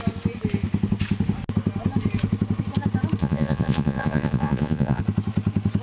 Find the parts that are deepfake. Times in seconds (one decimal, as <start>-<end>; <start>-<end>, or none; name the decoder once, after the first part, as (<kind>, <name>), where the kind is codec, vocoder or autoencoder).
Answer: 3.2-5.0 (vocoder, Vocos)